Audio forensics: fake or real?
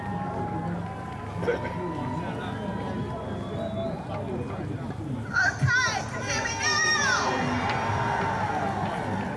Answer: real